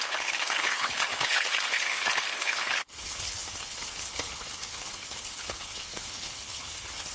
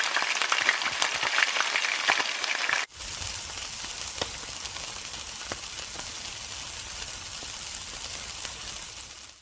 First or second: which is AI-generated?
first